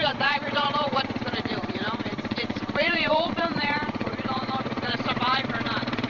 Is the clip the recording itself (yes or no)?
no